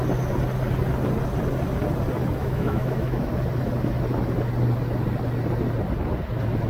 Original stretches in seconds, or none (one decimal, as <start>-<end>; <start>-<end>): 0.0-2.4; 3.3-6.7